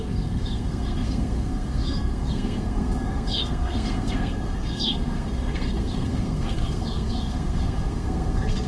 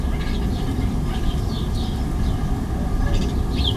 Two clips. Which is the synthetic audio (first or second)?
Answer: first